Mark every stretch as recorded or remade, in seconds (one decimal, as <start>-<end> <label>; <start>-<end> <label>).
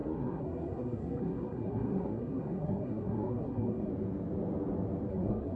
0.0-3.9 remade; 3.9-5.1 recorded; 5.1-5.6 remade